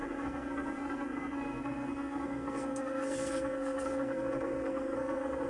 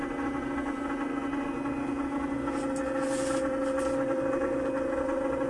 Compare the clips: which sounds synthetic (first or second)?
first